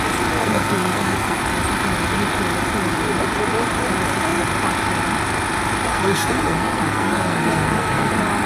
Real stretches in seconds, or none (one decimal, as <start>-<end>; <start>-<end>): 0.0-0.4; 1.4-5.9; 8.1-8.5